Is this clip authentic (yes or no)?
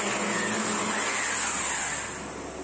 yes